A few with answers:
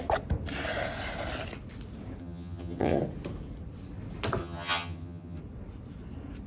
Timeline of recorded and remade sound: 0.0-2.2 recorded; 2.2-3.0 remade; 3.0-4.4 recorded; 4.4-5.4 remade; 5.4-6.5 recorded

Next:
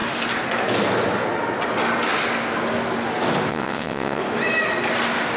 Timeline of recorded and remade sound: 0.0-3.5 recorded; 3.5-4.2 remade; 4.2-5.4 recorded

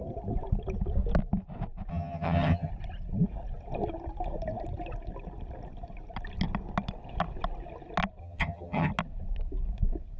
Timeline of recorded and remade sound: 0.0-1.9 recorded; 1.9-2.7 remade; 2.7-8.2 recorded; 8.2-8.9 remade; 8.9-10.2 recorded

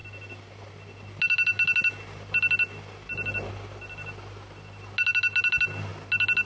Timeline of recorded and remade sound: 0.0-6.5 recorded

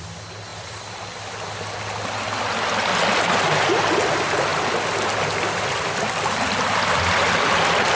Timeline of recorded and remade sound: 0.0-7.9 recorded